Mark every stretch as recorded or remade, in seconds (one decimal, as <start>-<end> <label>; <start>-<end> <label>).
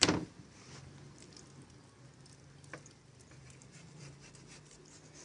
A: 0.0-3.4 recorded; 3.4-4.8 remade; 4.8-5.2 recorded